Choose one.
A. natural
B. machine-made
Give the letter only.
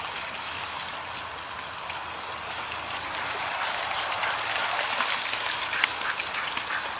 A